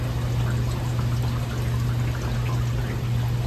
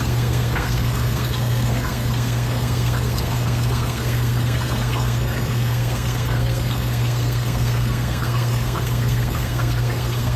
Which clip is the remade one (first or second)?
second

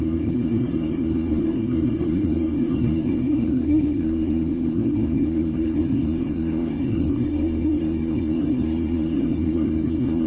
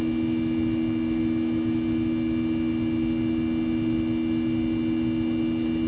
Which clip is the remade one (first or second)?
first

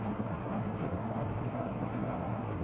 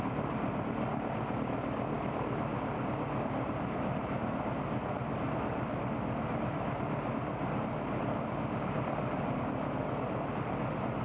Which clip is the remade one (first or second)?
first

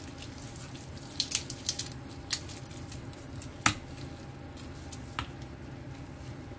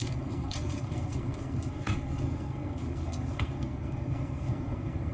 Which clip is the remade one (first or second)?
second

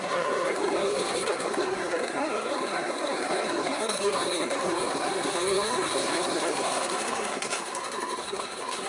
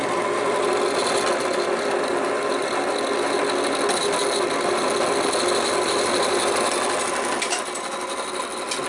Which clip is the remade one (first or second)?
first